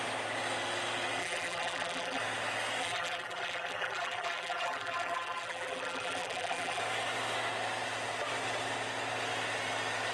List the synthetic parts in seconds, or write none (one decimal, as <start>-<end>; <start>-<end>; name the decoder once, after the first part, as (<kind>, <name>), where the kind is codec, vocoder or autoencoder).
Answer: 1.2-2.2 (vocoder, BigVGAN v2); 2.8-6.8